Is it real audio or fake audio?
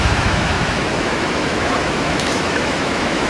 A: fake